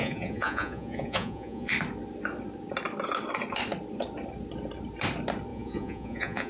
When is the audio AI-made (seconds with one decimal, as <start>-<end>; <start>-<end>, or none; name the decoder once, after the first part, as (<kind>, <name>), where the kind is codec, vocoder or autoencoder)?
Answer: 0.0-1.7 (vocoder, Vocos); 5.5-6.5